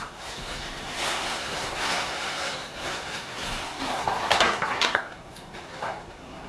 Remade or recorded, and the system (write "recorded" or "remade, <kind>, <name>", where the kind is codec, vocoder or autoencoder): remade, codec, SNAC